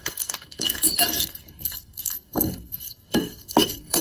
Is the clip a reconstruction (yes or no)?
yes